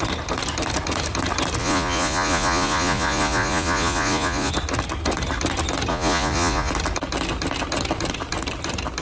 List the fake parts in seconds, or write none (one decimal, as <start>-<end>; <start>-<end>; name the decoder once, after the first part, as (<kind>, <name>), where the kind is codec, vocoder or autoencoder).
1.6-4.5 (vocoder, Vocos); 5.9-6.7